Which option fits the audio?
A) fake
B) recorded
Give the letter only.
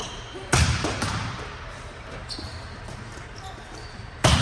A